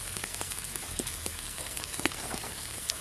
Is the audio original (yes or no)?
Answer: no